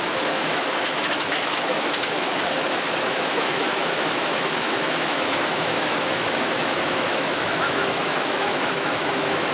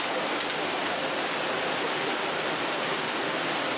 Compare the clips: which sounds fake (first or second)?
first